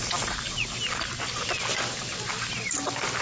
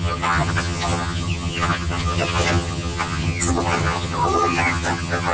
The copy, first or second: second